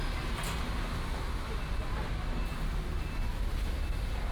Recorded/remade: recorded